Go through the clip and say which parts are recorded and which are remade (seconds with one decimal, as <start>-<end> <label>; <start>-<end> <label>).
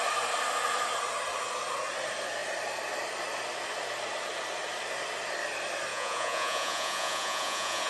0.0-5.9 recorded; 5.9-7.9 remade